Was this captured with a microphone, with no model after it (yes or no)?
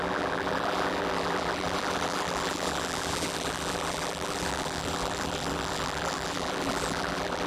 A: no